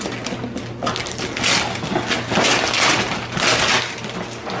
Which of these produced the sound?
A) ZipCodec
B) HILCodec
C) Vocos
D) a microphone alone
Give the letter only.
D